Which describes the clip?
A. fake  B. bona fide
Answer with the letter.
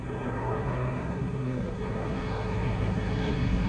A